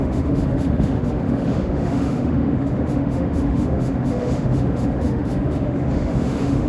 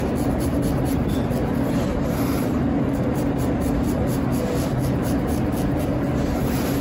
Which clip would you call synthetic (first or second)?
first